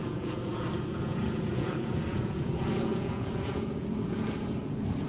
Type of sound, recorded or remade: remade